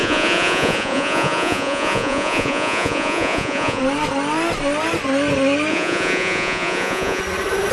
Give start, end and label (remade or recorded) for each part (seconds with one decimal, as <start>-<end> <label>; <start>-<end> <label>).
0.0-3.8 remade; 3.8-5.7 recorded; 5.7-7.2 remade; 7.2-7.7 recorded